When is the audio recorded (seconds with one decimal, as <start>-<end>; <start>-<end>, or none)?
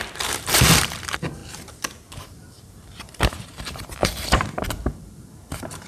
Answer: 1.4-2.2